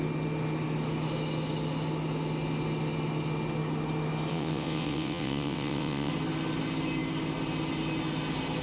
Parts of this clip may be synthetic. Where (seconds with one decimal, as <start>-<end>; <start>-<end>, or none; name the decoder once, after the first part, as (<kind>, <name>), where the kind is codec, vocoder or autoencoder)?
4.3-6.1 (vocoder, WaveNeXt)